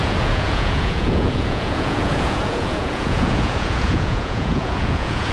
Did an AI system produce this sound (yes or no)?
yes